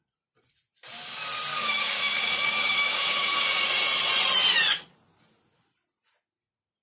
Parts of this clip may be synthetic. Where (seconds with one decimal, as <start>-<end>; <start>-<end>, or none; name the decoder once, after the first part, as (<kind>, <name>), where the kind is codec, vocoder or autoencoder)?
1.5-3.7 (codec, DAC)